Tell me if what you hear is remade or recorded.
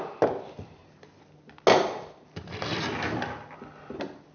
recorded